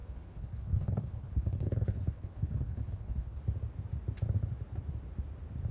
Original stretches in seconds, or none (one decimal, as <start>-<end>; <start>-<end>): 3.4-5.7